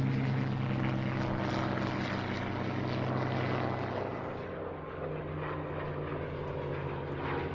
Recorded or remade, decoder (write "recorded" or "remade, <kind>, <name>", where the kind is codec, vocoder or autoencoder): recorded